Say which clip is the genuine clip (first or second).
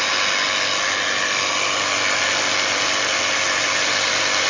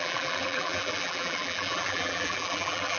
first